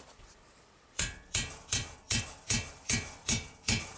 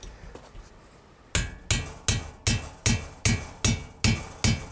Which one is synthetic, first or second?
first